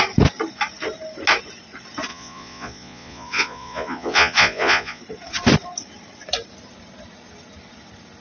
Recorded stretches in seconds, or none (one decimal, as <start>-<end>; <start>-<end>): 0.0-2.1; 5.0-8.2